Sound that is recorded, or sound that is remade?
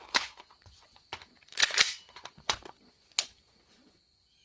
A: remade